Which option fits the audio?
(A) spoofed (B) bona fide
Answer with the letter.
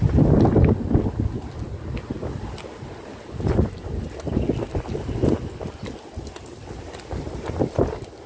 B